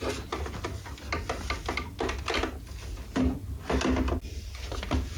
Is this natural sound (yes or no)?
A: yes